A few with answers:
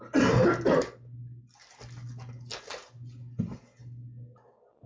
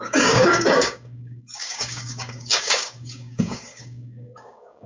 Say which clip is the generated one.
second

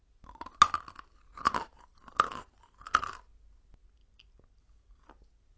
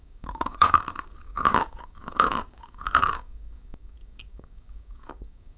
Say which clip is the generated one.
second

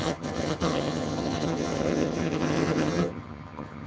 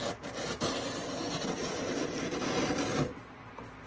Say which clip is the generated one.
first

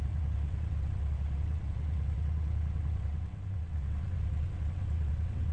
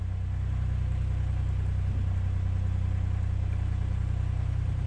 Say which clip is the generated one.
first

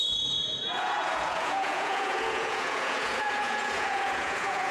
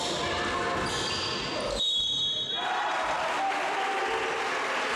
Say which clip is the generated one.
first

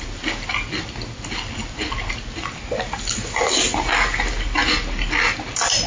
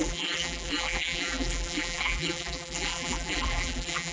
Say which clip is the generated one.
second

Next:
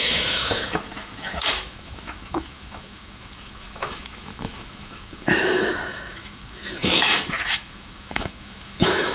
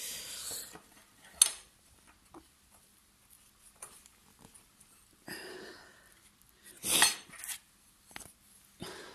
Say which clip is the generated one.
first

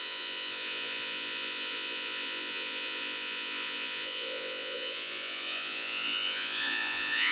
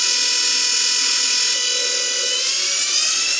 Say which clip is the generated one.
first